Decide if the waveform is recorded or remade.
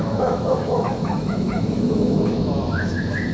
remade